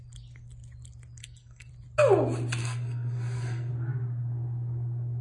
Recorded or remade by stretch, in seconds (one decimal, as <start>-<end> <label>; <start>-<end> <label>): 0.0-1.2 recorded; 1.2-1.7 remade; 1.7-2.6 recorded; 2.6-3.7 remade; 3.7-5.2 recorded